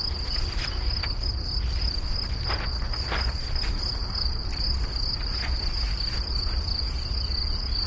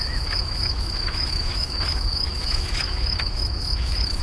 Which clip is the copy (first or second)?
second